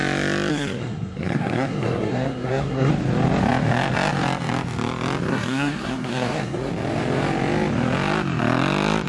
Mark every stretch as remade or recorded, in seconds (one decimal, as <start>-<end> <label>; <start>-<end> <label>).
0.0-0.5 recorded; 0.5-2.9 remade; 2.9-5.3 recorded; 5.3-6.7 remade; 6.7-9.1 recorded